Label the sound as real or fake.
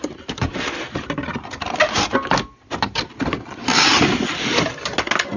real